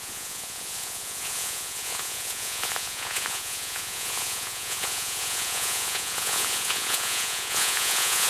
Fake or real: fake